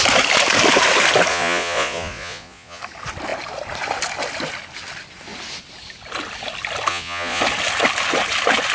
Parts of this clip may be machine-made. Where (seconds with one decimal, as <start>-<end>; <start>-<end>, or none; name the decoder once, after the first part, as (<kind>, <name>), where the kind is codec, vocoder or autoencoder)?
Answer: 1.3-2.8 (vocoder, Vocos); 6.9-7.4